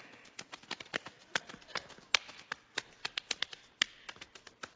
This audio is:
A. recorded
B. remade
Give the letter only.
A